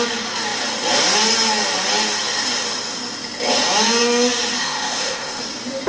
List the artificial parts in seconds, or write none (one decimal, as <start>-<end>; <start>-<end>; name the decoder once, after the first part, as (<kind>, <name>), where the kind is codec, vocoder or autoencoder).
4.6-5.4 (codec, ZipCodec)